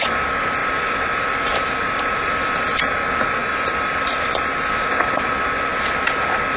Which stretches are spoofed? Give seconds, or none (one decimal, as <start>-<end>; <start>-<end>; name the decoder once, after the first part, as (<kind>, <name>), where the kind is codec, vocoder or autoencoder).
0.6-2.5 (vocoder, BigVGAN v2); 3.4-4.7